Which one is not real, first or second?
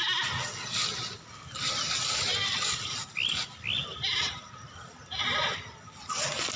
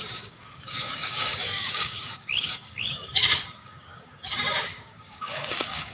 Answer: second